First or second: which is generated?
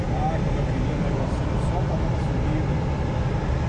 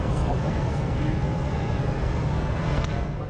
second